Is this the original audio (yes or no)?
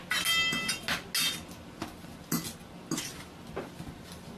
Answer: yes